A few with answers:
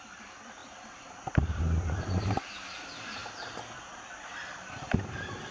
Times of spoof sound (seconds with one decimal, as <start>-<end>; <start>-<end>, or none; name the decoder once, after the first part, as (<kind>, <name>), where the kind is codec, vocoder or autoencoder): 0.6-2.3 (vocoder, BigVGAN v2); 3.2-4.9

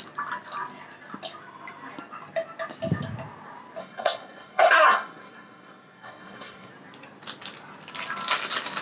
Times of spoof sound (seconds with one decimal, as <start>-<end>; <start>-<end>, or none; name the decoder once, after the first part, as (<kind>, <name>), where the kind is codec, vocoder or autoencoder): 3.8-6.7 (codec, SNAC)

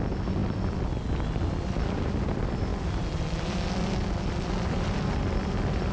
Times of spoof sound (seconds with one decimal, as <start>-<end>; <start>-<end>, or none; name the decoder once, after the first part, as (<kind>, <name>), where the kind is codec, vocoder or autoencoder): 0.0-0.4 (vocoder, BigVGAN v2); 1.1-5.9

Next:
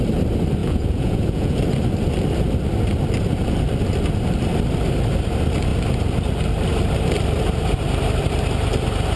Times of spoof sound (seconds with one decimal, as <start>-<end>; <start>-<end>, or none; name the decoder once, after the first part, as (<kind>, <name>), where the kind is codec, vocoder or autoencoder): 0.6-1.6 (vocoder, Vocos)